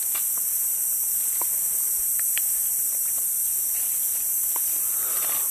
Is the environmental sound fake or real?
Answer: real